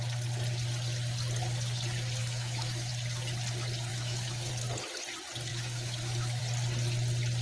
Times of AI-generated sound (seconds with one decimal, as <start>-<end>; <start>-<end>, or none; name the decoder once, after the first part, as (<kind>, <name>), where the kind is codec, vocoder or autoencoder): 2.2-2.9 (autoencoder, DAC-VAE); 3.9-4.5; 5.5-6.4